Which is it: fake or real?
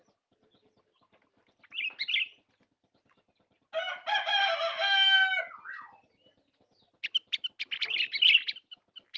real